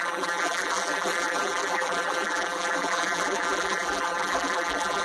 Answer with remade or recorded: remade